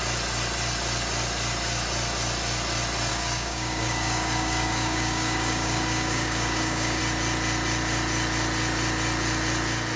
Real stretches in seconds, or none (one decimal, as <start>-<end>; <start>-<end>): 0.0-3.1; 7.0-10.0